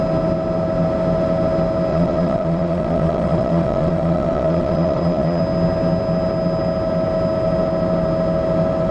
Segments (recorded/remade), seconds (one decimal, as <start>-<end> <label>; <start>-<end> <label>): 0.0-1.9 recorded; 1.9-5.4 remade; 5.4-8.9 recorded